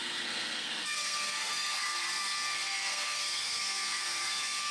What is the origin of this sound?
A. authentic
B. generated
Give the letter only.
B